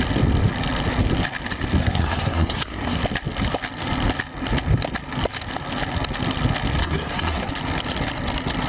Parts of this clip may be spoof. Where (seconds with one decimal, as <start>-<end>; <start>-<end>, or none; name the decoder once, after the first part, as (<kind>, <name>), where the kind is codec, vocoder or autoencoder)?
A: 1.8-3.0 (codec, SNAC); 6.8-7.5